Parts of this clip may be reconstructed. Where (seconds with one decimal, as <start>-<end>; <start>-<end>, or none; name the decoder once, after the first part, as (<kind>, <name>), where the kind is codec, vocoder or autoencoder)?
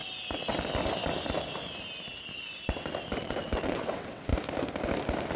3.2-4.3 (vocoder, WaveNeXt)